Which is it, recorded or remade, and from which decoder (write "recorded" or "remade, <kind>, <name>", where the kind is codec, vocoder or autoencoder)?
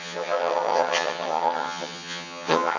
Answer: remade, vocoder, HiFi-GAN